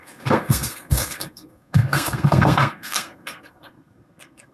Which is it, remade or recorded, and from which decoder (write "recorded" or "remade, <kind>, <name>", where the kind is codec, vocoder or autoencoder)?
remade, codec, SNAC